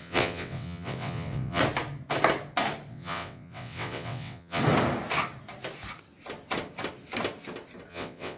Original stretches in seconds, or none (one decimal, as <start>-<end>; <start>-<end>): 1.6-2.9; 4.6-7.9